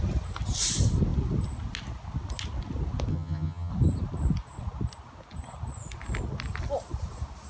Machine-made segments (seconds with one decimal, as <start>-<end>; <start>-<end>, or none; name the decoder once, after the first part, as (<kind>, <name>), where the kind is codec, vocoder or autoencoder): 3.1-3.7 (vocoder, HiFi-GAN)